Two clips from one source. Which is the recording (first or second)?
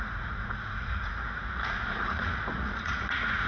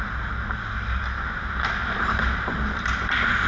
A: second